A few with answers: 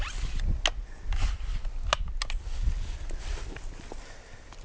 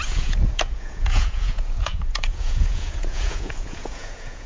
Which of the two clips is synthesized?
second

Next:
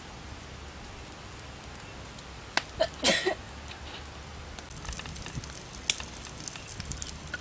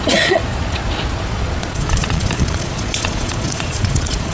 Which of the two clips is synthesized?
second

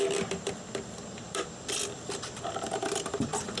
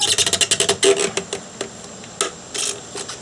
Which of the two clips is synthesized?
first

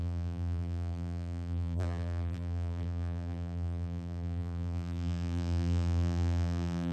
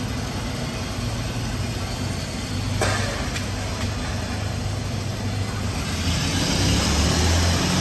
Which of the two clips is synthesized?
first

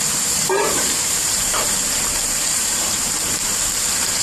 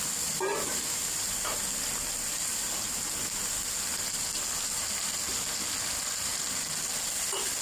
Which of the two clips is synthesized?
first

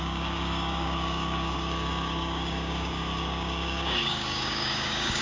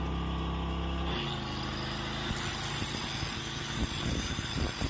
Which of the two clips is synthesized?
first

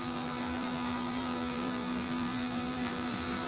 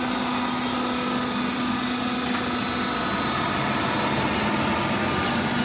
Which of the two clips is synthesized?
first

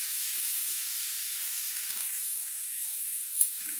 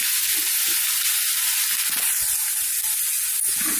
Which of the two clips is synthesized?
first